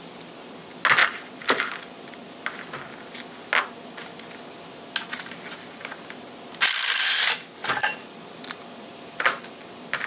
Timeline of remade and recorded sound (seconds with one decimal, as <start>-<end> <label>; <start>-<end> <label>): 0.0-1.0 recorded; 1.0-3.0 remade; 3.0-7.6 recorded; 7.6-9.4 remade; 9.4-10.1 recorded